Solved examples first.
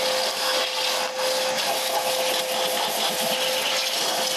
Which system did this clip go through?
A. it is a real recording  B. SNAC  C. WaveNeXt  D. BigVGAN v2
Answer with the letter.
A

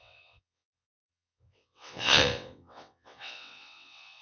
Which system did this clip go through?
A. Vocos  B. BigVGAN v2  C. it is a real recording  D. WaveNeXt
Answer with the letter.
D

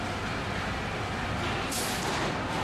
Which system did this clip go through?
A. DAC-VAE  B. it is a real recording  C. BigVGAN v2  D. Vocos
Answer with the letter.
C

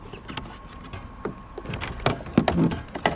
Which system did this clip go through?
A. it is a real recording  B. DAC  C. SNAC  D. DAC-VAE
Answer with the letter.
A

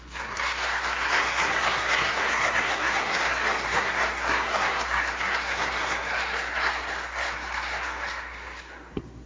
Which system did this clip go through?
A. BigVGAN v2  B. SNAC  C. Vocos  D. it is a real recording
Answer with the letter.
B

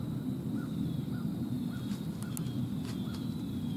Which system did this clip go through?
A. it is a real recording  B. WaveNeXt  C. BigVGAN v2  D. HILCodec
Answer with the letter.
A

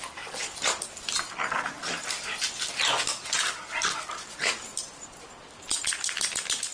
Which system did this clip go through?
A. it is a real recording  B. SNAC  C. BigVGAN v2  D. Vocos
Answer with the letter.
A